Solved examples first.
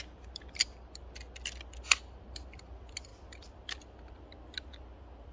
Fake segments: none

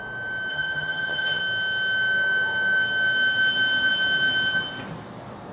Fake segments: 0.5-1.4 (vocoder, HiFi-GAN)

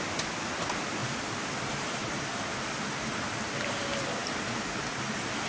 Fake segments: none

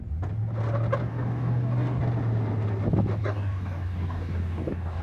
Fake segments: 1.1-2.0 (codec, DAC); 3.2-5.0

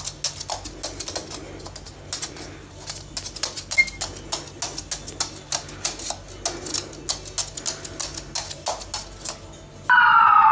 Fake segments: none